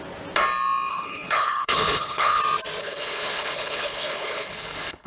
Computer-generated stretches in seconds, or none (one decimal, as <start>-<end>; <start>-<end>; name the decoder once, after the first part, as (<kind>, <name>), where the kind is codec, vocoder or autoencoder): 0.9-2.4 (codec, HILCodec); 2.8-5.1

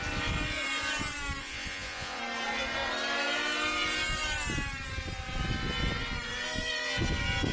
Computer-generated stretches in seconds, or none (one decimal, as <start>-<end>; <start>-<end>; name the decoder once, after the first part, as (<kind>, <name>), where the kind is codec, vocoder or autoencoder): 1.4-2.2 (vocoder, Vocos)

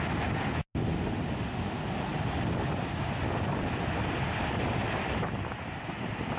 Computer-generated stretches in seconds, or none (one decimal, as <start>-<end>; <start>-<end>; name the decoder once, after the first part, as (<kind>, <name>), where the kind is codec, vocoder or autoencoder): none

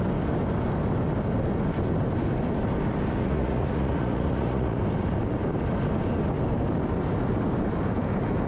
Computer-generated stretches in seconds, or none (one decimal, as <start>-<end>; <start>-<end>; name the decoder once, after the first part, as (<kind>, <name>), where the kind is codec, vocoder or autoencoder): 3.2-4.8 (vocoder, Vocos)